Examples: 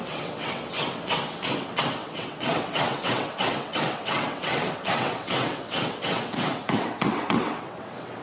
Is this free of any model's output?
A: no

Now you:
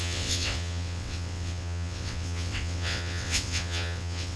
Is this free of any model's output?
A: no